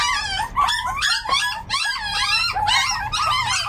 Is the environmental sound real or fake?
real